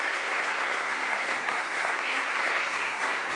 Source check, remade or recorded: remade